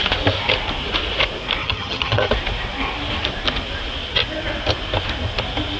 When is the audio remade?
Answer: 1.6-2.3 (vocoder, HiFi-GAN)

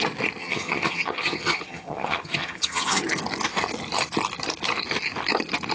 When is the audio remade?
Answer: 0.4-3.0 (vocoder, HiFi-GAN)

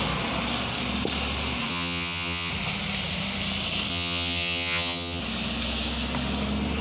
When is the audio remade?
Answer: 1.7-2.5 (vocoder, HiFi-GAN); 3.9-5.2

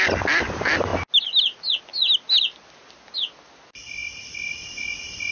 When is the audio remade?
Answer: none